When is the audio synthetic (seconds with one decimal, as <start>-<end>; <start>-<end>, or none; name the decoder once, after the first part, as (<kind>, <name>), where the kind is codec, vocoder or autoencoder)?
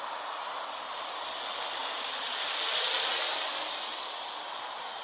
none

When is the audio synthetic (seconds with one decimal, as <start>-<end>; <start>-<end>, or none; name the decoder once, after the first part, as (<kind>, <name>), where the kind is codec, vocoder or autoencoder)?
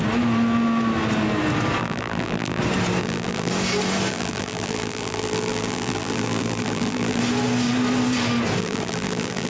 1.8-2.6 (vocoder, BigVGAN v2); 3.0-3.5; 4.1-7.2; 8.6-9.5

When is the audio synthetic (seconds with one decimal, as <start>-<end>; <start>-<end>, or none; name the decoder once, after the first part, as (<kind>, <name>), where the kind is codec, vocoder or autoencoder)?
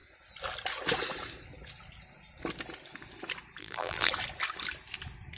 3.6-4.1 (vocoder, BigVGAN v2)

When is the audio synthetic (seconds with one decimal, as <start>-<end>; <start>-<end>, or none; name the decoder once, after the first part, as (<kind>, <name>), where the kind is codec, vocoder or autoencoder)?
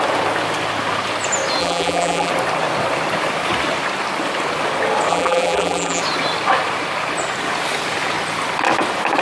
1.6-2.3 (vocoder, BigVGAN v2); 5.1-6.0